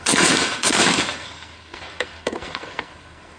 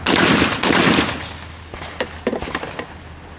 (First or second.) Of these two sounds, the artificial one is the first